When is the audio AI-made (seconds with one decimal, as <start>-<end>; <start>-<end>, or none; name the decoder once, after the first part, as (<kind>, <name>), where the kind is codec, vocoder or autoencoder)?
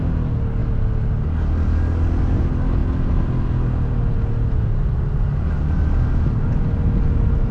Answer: none